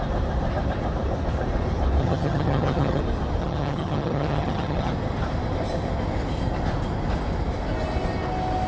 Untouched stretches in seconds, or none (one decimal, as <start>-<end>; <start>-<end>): 0.0-2.0; 3.0-3.4; 4.9-8.7